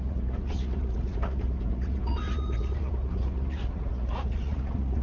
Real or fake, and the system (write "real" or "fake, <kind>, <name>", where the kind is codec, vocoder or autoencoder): fake, vocoder, Vocos